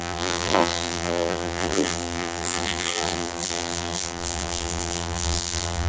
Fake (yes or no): yes